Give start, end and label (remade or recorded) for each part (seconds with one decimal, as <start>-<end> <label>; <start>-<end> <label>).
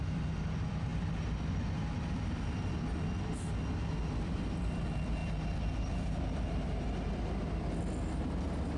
0.0-8.8 recorded